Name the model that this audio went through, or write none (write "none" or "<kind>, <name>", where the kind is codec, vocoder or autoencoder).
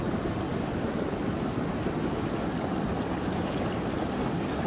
none